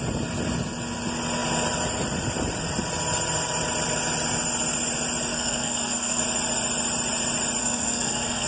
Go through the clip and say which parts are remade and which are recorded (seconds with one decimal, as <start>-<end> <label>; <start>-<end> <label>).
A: 0.0-5.3 recorded; 5.3-6.2 remade; 6.2-7.6 recorded; 7.6-8.5 remade